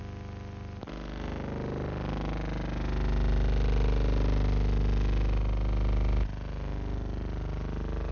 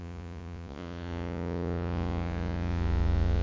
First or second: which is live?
first